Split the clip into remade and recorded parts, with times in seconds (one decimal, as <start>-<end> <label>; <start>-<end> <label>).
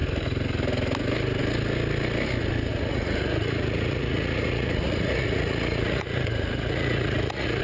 0.0-2.7 recorded; 2.7-7.6 remade